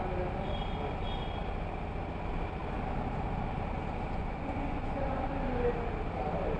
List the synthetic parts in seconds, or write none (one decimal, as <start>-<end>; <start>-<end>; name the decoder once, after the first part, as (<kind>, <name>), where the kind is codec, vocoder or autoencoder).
4.2-5.3 (vocoder, Vocos)